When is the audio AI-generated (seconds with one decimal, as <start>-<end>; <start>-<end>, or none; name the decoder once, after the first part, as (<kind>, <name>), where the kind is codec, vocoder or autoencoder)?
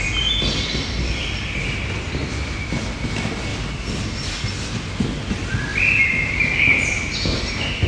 none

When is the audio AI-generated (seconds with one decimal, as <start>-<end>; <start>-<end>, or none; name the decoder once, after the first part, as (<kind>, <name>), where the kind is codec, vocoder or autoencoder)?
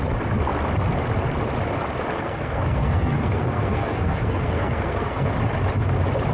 2.1-5.3 (codec, SNAC)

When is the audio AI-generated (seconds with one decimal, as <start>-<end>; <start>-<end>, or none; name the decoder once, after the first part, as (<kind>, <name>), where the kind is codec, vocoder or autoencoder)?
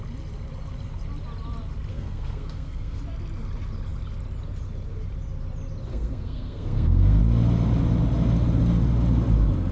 1.9-3.0 (codec, SNAC); 5.9-7.2